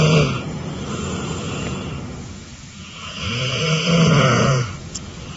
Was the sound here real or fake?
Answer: fake